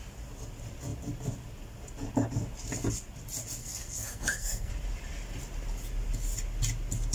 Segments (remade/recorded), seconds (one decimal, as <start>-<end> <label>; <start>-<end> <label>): 0.0-3.6 recorded; 3.6-4.7 remade; 4.7-7.1 recorded